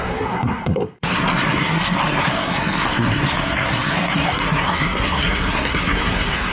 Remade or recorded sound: remade